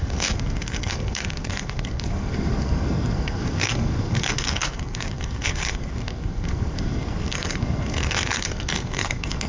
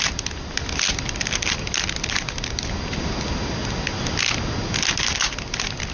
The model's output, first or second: first